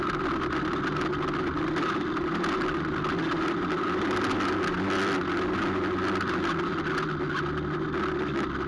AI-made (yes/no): no